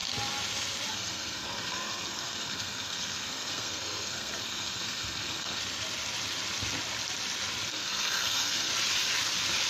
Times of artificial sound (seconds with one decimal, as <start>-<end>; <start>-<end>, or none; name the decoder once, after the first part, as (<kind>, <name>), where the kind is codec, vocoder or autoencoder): 0.9-5.6 (codec, SNAC); 7.7-8.7